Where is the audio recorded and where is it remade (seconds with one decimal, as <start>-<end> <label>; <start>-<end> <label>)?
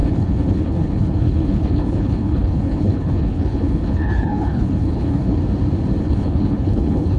0.0-5.4 remade; 5.4-6.0 recorded; 6.0-7.2 remade